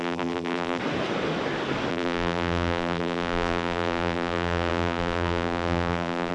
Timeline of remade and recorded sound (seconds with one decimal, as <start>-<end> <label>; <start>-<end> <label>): 0.0-0.8 remade; 0.8-1.9 recorded; 1.9-6.3 remade

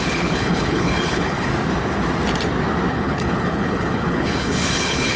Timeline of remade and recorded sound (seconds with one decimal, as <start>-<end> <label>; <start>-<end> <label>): 0.0-1.5 remade; 1.5-2.9 recorded; 2.9-5.2 remade